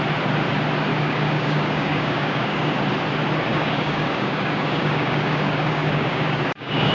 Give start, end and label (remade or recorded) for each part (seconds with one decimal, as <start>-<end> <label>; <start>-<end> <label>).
0.0-0.9 recorded; 0.9-2.8 remade; 2.8-3.5 recorded; 3.5-6.9 remade